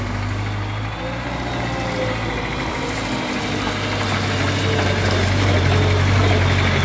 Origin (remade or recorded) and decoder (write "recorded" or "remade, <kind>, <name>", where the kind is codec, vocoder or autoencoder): recorded